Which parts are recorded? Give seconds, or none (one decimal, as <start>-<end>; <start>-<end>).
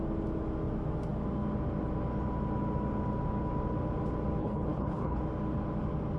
0.0-4.4; 5.2-6.2